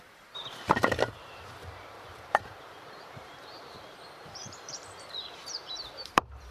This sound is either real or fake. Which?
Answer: fake